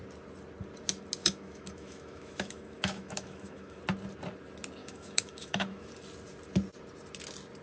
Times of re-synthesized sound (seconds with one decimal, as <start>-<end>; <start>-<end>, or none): 1.2-3.8; 4.8-5.9